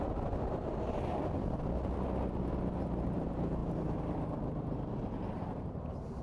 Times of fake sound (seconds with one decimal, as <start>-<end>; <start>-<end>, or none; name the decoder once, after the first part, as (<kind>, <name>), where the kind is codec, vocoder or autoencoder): 3.6-6.2 (vocoder, BigVGAN v2)